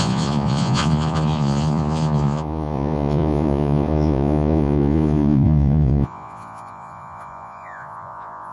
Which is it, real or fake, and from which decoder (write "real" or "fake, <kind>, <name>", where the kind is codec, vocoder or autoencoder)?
fake, vocoder, Vocos